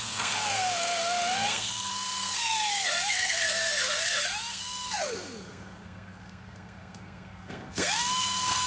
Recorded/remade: remade